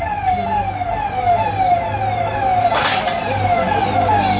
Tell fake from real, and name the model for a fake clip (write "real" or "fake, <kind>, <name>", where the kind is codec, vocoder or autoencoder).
real